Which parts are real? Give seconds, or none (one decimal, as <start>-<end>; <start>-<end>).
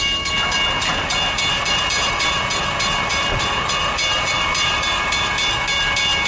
0.0-1.5; 5.3-6.3